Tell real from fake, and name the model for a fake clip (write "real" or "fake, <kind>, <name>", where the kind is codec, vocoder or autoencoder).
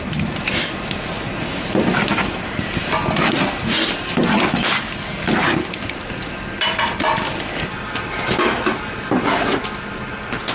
real